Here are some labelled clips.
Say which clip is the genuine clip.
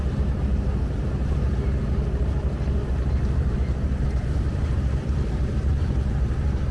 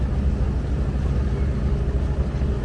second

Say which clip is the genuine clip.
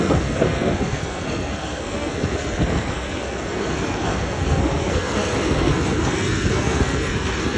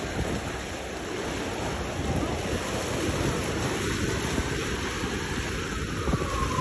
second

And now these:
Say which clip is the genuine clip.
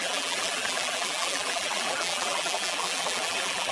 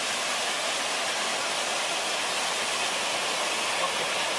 second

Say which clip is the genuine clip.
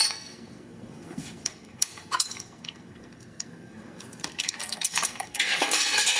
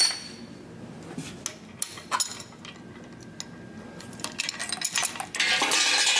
second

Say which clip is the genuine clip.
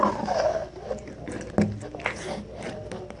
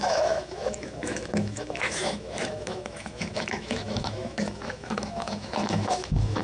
first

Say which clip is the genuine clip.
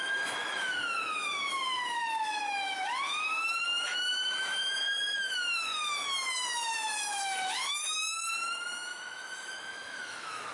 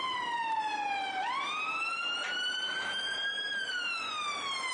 second